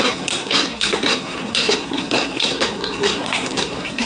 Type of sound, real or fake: fake